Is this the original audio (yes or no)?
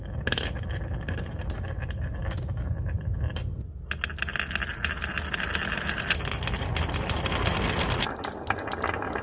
yes